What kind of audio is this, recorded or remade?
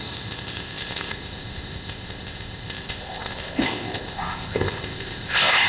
remade